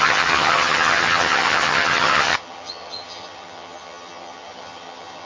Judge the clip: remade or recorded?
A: remade